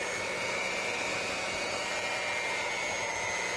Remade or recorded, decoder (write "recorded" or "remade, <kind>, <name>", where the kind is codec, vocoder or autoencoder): recorded